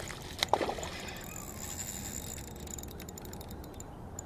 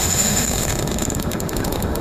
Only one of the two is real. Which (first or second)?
first